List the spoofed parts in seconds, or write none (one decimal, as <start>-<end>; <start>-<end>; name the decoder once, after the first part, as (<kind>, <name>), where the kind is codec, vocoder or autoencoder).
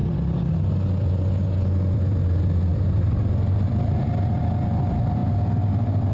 2.7-4.5 (vocoder, BigVGAN v2)